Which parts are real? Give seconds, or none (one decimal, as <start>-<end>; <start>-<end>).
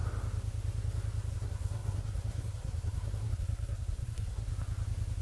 0.0-1.3; 4.5-5.2